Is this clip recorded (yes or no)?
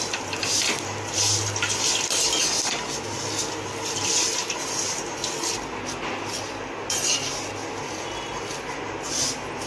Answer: yes